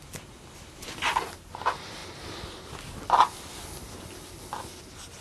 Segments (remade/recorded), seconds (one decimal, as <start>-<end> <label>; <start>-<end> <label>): 0.0-5.2 recorded